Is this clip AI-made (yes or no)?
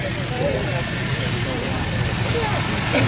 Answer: no